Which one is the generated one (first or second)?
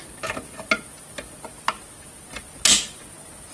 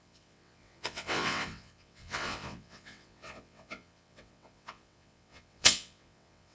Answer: second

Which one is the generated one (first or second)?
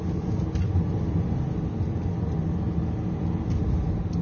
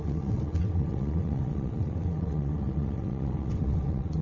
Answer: second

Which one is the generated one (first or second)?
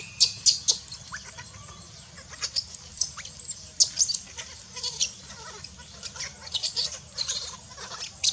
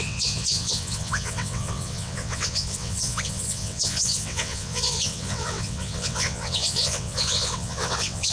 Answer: second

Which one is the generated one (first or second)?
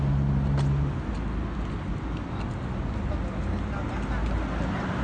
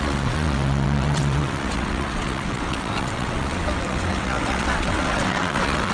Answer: second